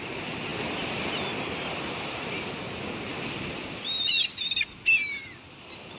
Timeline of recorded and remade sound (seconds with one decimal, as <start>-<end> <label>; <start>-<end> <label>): 0.0-6.0 recorded